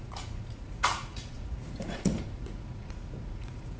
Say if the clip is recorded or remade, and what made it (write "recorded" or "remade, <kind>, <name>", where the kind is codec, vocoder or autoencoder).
remade, vocoder, Vocos